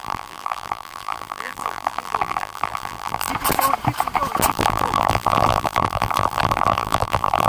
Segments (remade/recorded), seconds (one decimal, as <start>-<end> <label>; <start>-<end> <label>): 0.0-3.3 remade; 3.3-4.5 recorded; 4.5-7.5 remade